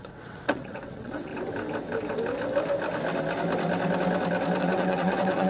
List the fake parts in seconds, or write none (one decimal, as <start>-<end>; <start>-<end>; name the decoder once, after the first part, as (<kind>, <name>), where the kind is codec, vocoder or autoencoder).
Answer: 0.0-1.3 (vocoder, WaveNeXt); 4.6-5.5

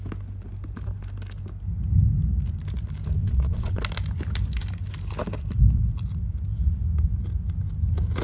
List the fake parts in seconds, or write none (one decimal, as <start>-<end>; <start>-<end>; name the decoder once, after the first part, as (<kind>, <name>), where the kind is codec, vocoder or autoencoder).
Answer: 3.2-3.8 (vocoder, WaveNeXt)

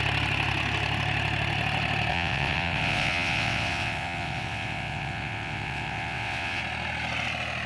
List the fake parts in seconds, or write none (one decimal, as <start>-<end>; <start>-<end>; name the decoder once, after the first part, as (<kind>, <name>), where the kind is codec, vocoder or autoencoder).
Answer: 2.1-6.6 (vocoder, WaveNeXt)